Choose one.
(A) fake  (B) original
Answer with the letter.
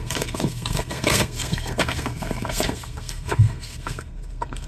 A